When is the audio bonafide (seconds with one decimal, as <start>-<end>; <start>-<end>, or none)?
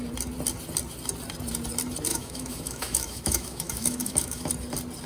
0.0-2.1; 4.5-5.1